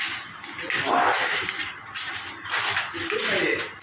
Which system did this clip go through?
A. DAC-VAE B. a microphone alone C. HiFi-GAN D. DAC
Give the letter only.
B